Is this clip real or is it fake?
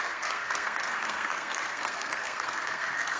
fake